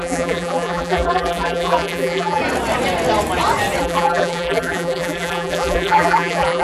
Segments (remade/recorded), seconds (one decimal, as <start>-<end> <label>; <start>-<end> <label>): 0.0-2.4 remade; 2.4-3.8 recorded; 3.8-6.6 remade